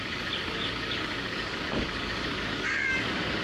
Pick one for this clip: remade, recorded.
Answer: remade